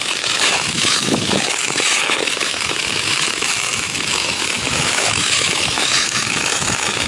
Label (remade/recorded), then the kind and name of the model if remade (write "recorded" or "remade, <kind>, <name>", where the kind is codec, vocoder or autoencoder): remade, autoencoder, DAC-VAE